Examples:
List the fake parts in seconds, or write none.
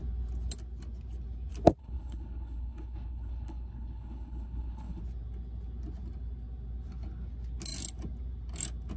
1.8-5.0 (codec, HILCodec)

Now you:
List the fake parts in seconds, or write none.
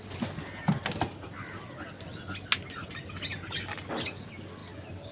none